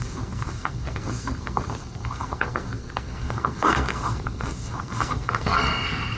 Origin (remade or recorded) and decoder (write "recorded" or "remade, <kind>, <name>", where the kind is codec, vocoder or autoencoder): remade, codec, SNAC